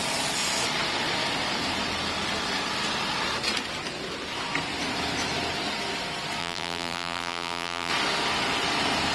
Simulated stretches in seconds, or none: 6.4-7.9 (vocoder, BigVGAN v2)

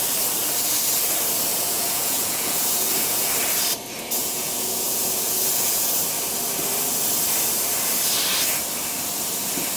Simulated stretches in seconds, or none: 1.5-3.3 (vocoder, Vocos); 4.2-5.9

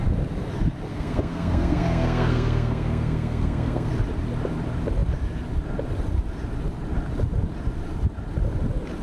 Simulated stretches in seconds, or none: 0.9-3.9 (codec, SNAC)

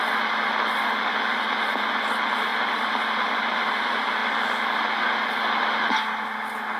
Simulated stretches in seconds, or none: 2.5-3.6 (vocoder, BigVGAN v2)

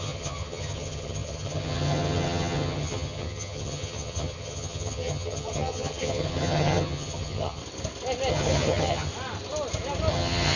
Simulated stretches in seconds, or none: 0.0-7.6 (vocoder, HiFi-GAN); 8.3-9.1; 10.1-10.6

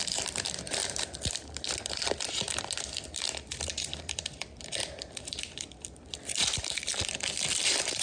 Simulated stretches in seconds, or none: 0.0-0.8 (vocoder, BigVGAN v2); 3.2-8.0

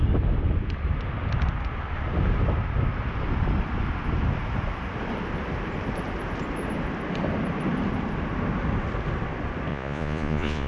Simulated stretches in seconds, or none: 9.7-10.7 (vocoder, Vocos)